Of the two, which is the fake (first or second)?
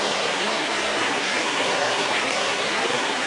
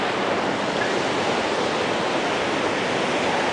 first